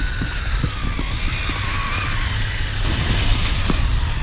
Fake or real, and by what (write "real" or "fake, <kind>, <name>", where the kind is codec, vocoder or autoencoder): real